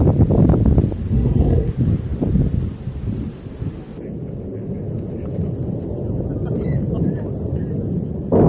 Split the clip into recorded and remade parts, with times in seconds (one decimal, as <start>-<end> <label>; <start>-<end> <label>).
0.0-1.1 recorded; 1.1-1.7 remade; 1.7-8.5 recorded

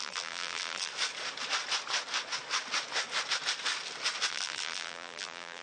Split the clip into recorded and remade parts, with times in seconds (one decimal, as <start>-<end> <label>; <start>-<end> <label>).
0.0-0.9 remade; 0.9-4.3 recorded; 4.3-5.6 remade